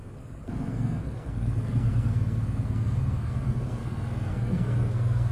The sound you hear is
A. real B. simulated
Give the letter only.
B